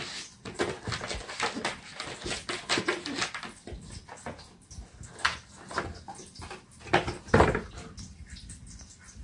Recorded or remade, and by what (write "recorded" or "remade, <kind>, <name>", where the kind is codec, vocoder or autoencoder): recorded